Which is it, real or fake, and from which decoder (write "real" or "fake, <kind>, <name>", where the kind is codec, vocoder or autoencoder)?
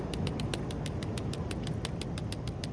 real